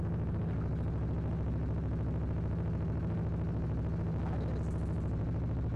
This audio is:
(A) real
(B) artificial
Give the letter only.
A